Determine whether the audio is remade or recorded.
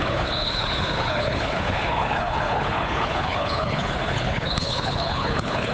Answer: remade